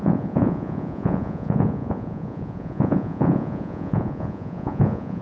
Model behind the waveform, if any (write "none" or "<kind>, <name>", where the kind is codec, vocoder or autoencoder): vocoder, Vocos